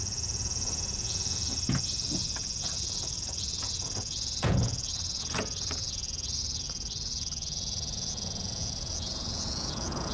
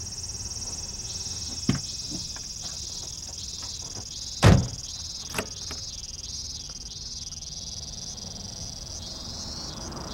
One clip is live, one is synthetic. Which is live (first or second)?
second